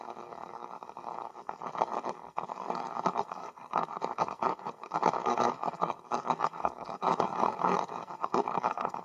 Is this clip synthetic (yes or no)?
yes